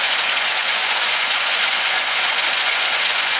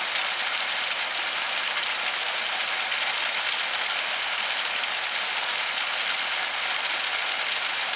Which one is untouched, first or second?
second